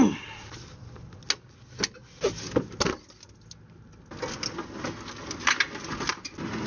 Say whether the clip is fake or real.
real